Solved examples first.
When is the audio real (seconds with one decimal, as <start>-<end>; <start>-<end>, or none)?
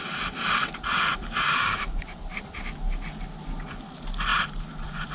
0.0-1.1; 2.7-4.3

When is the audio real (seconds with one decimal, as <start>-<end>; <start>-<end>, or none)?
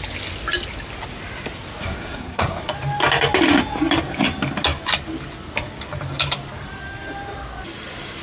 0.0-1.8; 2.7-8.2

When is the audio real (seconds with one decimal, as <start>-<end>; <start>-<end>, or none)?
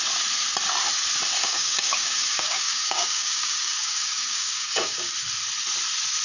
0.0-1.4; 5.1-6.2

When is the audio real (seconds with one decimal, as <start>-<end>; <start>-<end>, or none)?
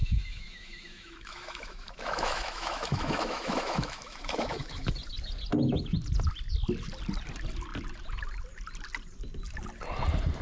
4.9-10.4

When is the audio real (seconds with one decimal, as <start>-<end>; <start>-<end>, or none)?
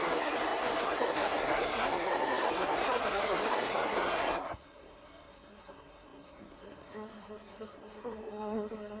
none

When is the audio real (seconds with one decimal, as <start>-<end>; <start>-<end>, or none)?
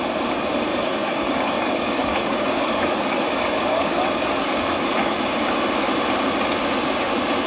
0.0-0.7; 5.2-7.5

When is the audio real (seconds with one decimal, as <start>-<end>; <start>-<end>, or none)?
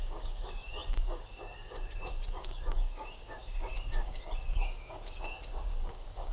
none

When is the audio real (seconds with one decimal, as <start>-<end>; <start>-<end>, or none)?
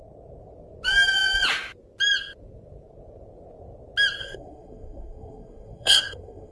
0.0-4.2